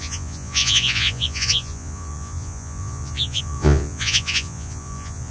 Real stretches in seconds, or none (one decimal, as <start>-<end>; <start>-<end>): none